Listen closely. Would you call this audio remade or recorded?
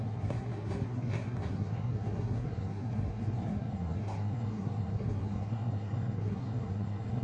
remade